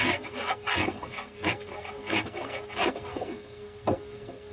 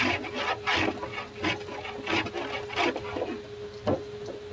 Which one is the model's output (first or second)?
first